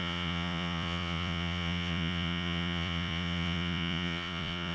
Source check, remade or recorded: remade